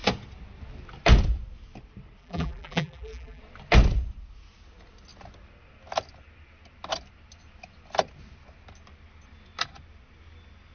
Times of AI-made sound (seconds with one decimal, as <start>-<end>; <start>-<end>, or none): 2.2-3.4